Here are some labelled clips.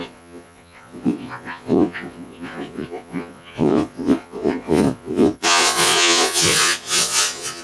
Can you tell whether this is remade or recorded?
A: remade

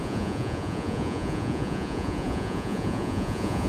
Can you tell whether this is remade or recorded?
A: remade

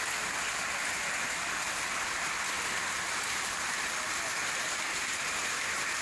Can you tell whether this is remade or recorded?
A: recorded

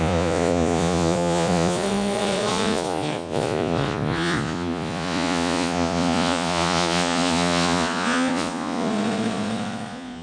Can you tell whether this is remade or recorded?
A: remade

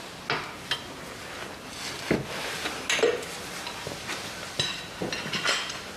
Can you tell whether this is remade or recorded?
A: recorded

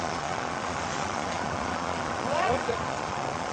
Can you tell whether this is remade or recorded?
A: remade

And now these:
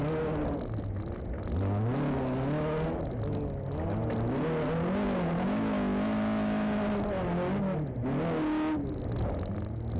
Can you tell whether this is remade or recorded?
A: recorded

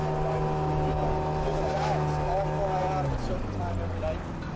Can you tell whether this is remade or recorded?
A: recorded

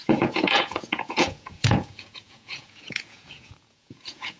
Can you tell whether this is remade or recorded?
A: remade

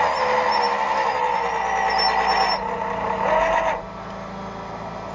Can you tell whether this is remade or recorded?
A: recorded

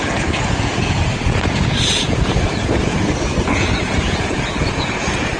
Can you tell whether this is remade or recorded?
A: remade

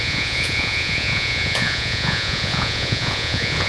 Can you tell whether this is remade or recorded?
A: remade